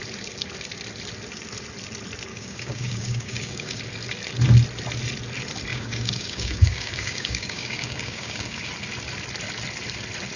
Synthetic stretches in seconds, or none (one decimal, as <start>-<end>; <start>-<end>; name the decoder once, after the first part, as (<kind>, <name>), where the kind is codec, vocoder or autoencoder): 2.3-3.8 (codec, DAC); 5.7-8.7